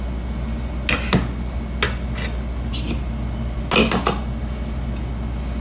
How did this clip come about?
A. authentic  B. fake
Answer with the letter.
A